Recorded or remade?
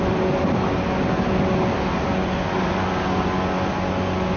recorded